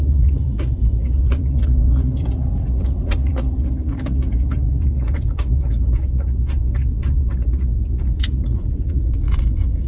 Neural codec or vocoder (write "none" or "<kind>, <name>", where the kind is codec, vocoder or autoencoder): vocoder, Vocos